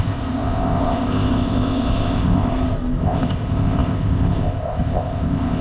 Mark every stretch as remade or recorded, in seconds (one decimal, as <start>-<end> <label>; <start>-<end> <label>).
0.0-2.5 remade; 2.5-3.0 recorded; 3.0-5.6 remade